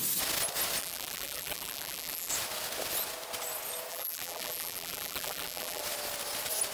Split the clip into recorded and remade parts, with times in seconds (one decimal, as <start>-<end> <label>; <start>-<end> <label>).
0.0-0.8 recorded; 0.8-2.3 remade; 2.3-3.9 recorded; 3.9-5.8 remade; 5.8-6.7 recorded